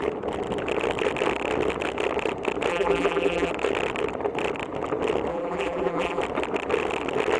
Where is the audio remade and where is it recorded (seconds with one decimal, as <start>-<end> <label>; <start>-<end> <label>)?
0.0-2.7 recorded; 2.7-3.5 remade; 3.5-5.3 recorded; 5.3-6.2 remade; 6.2-7.4 recorded

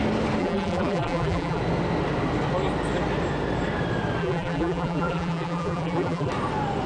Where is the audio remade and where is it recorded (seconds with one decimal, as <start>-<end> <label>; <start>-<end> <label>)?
0.0-0.4 recorded; 0.4-1.6 remade; 1.6-4.2 recorded; 4.2-6.3 remade; 6.3-6.9 recorded